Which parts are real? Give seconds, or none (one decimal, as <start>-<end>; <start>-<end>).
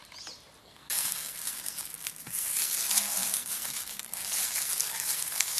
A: 0.0-0.6